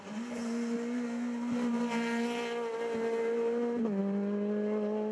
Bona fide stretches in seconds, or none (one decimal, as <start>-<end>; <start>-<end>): 0.0-5.1